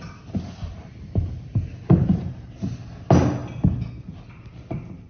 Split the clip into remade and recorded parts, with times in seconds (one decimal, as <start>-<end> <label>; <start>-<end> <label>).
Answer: 0.0-5.1 recorded